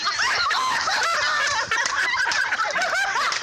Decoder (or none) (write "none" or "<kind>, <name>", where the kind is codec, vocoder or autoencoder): vocoder, BigVGAN v2